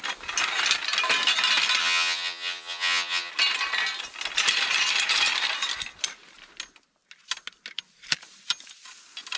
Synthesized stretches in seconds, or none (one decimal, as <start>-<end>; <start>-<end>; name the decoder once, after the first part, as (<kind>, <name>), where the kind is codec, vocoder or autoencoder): 1.8-3.3 (vocoder, HiFi-GAN)